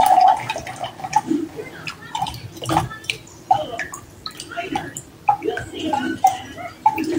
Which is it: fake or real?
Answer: real